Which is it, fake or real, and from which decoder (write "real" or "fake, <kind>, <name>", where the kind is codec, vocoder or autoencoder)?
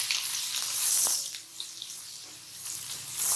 fake, vocoder, BigVGAN v2